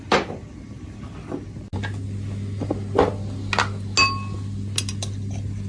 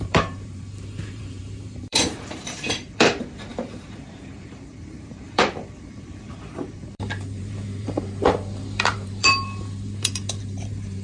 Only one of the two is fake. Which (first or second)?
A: second